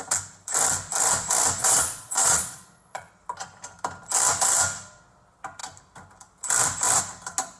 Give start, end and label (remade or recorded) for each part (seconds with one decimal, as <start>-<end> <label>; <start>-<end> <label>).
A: 0.0-1.6 recorded; 1.6-3.1 remade; 3.1-7.6 recorded